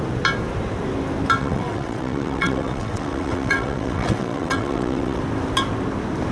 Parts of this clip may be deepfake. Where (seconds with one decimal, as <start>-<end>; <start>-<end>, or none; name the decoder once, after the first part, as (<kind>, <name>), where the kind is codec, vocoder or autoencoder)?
1.4-5.2 (vocoder, WaveNeXt)